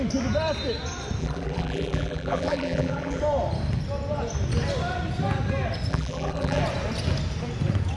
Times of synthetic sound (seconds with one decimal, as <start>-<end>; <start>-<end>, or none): 1.2-3.2; 5.9-6.6

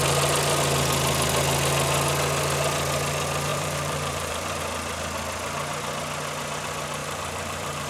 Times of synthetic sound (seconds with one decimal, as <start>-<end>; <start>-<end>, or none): 3.5-4.6; 7.0-7.9

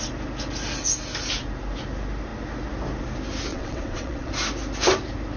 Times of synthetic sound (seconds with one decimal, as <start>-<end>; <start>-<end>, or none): 3.5-4.3

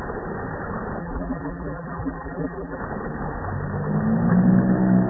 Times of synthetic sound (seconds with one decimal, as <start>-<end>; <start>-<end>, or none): 1.0-2.8

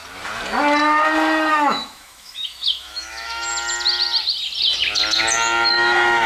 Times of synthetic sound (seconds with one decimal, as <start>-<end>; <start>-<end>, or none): 1.5-3.5; 5.7-6.3

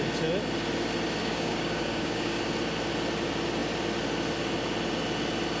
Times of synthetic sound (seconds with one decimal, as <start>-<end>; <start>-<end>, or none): 1.2-2.4

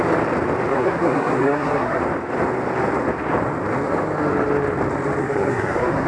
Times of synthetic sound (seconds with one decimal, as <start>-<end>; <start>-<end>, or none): 0.7-2.0; 5.2-6.1

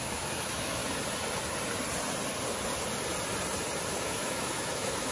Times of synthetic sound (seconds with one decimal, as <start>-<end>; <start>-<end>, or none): 0.0-0.8; 3.9-5.1